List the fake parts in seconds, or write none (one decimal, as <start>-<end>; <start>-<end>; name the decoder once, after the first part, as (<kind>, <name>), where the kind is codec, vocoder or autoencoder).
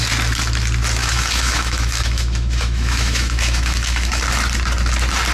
1.0-4.2 (autoencoder, DAC-VAE)